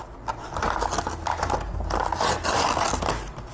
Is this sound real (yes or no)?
yes